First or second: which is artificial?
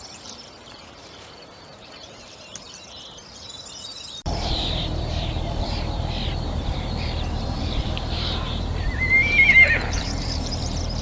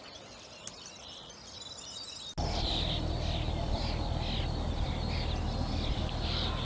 first